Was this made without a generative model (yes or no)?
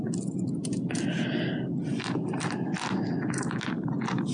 yes